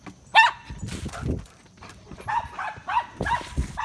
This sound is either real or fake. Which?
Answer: real